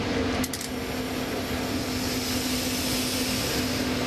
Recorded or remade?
recorded